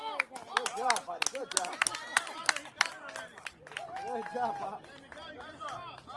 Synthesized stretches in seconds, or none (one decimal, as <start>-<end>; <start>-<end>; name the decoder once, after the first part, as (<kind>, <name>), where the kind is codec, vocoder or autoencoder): none